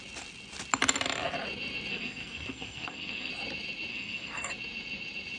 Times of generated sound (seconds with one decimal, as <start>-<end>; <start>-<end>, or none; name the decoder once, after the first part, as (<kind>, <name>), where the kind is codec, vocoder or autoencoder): 1.9-3.3 (codec, SNAC); 3.9-4.5